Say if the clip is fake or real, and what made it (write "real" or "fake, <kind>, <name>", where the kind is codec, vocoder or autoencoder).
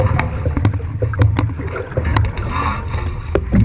real